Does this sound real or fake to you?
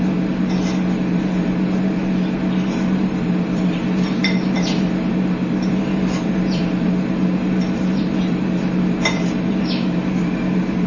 fake